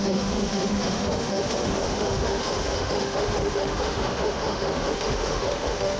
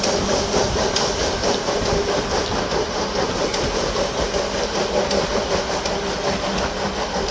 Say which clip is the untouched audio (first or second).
second